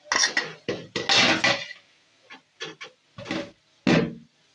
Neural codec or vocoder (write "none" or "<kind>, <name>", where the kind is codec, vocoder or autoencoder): none